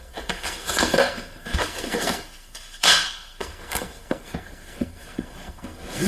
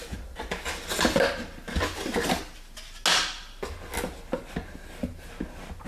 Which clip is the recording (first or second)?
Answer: second